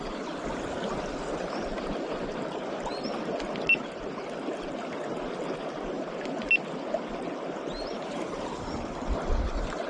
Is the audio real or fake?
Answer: real